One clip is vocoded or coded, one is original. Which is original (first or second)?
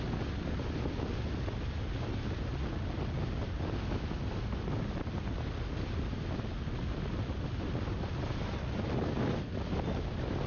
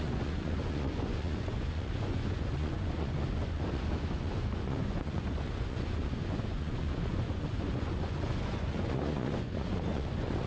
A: first